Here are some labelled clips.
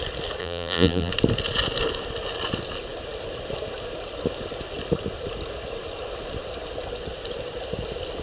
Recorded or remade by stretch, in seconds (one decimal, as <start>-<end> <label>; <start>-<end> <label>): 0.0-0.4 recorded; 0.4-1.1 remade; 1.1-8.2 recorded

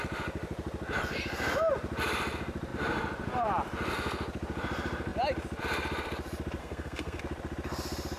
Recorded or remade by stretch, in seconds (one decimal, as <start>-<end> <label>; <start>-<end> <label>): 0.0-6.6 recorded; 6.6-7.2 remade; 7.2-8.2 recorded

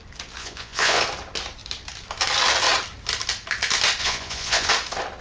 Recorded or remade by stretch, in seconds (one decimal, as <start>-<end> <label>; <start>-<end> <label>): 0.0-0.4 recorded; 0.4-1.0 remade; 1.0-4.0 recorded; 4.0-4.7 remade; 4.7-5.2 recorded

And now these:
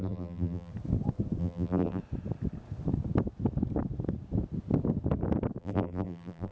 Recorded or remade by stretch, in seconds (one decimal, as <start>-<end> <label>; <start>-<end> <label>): 0.0-0.7 remade; 0.7-1.4 recorded; 1.4-2.0 remade; 2.0-5.6 recorded; 5.6-6.5 remade

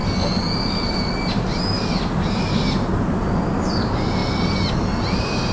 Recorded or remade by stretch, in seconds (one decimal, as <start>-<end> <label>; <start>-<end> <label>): 0.0-5.5 recorded